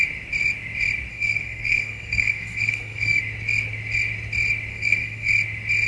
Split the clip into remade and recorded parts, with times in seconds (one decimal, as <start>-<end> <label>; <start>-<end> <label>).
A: 0.0-1.1 recorded; 1.1-3.2 remade; 3.2-4.7 recorded; 4.7-5.3 remade; 5.3-5.9 recorded